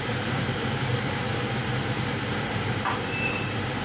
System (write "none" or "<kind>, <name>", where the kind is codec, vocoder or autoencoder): vocoder, BigVGAN v2